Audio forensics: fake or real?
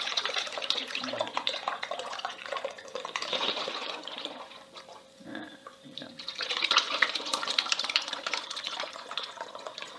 fake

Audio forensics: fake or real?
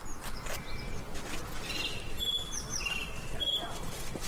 real